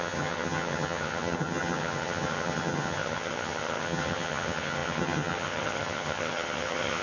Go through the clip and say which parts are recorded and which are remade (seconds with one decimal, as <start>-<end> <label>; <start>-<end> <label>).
0.0-7.0 remade